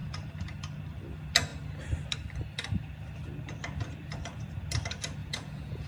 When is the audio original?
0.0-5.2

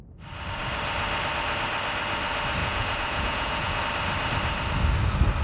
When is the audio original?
0.0-2.6; 3.8-5.4